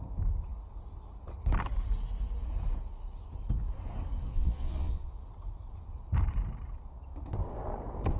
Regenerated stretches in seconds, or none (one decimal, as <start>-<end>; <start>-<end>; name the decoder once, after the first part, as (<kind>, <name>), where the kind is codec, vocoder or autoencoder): 4.3-5.2 (vocoder, Vocos)